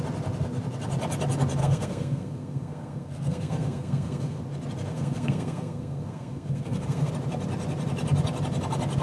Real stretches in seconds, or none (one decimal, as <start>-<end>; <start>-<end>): 0.0-1.6; 4.4-4.9; 7.1-9.0